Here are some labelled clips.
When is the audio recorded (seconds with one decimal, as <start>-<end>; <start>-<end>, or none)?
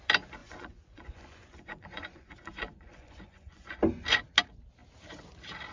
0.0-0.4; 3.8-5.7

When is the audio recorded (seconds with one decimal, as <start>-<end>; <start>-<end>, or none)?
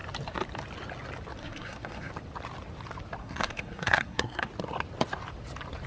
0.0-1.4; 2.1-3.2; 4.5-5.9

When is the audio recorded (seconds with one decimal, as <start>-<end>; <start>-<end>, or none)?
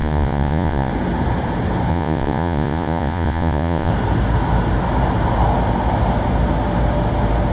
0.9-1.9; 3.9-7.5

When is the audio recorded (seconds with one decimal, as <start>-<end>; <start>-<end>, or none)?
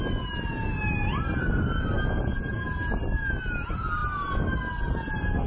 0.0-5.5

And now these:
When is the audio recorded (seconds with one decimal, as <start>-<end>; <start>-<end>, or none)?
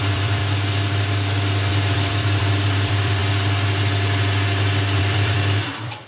0.4-1.7; 3.2-5.0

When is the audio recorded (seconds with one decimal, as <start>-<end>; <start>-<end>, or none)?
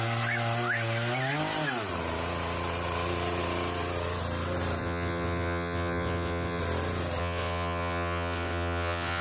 0.0-4.8; 6.6-7.2